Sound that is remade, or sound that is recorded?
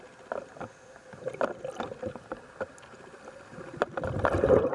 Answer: recorded